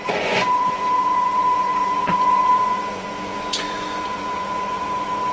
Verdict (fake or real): fake